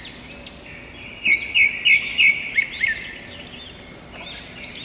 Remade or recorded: recorded